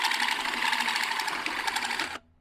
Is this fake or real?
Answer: real